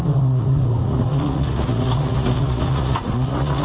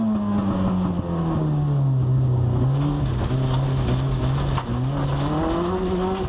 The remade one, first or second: first